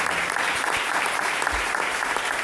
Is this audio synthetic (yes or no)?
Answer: yes